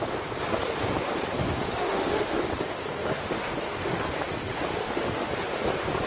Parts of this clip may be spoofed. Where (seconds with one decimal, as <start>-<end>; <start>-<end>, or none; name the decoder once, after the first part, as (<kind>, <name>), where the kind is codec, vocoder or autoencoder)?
1.4-2.4 (autoencoder, DAC-VAE); 3.1-4.0; 4.8-5.3